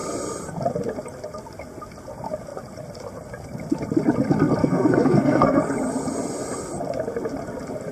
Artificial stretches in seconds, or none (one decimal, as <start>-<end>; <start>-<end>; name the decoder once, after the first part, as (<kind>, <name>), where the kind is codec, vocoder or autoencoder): 4.6-5.6 (codec, SNAC)